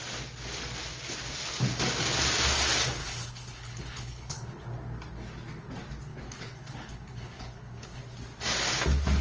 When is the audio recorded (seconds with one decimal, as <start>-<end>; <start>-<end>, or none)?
0.0-3.0; 4.6-6.1; 8.0-9.2